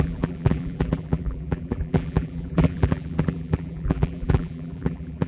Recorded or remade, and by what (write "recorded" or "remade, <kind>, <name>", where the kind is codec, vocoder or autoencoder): remade, vocoder, BigVGAN v2